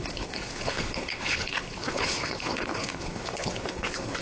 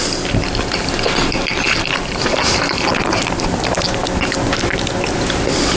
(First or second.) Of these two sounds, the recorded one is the second